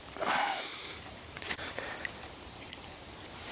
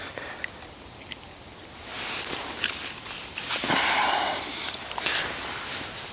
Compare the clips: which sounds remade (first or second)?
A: first